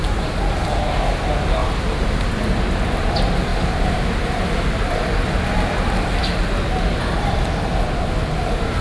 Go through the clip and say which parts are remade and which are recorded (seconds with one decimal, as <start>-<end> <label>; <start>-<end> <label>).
0.0-1.6 recorded; 1.6-2.4 remade; 2.4-8.8 recorded